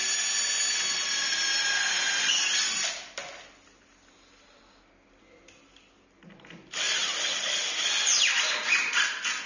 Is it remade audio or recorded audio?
recorded